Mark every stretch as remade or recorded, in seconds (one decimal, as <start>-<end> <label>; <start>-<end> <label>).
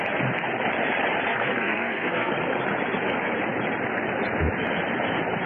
0.0-1.3 recorded; 1.3-2.3 remade; 2.3-5.5 recorded